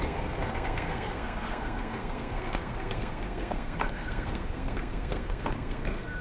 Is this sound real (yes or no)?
no